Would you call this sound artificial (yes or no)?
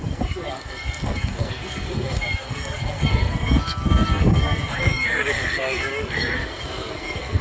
yes